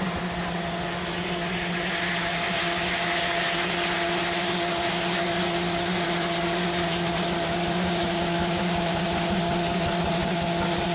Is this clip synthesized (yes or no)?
no